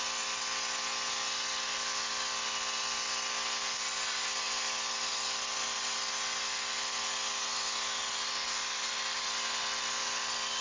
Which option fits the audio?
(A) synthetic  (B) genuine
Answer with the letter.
B